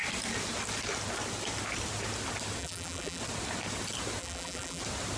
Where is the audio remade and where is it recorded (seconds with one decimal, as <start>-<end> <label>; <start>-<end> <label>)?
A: 0.0-2.6 recorded; 2.6-3.2 remade; 3.2-4.2 recorded; 4.2-4.8 remade; 4.8-5.2 recorded